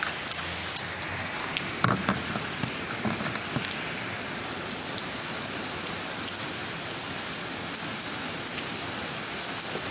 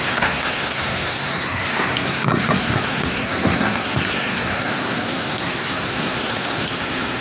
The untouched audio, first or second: first